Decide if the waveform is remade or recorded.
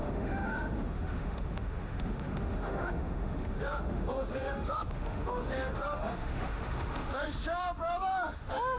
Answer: remade